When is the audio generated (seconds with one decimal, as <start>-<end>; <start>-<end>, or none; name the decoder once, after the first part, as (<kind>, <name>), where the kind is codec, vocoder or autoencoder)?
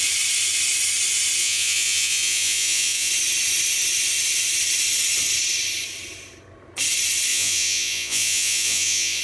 1.4-3.1 (vocoder, Vocos); 7.3-9.2